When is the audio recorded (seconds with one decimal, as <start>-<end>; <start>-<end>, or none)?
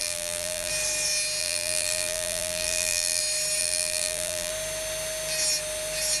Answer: 0.7-1.4; 3.2-3.6; 4.5-6.2